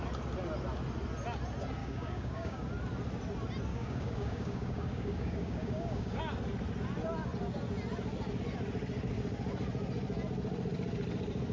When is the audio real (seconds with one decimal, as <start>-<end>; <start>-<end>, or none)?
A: 0.0-1.8; 2.6-3.7; 6.2-11.5